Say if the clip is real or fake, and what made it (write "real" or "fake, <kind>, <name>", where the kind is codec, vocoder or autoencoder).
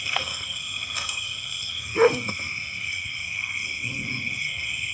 fake, codec, SNAC